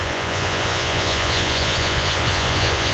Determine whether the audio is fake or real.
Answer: fake